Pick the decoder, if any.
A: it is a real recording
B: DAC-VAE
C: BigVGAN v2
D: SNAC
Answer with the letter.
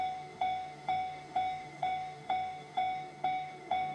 B